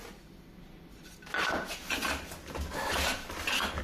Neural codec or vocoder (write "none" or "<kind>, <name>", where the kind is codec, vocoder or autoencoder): none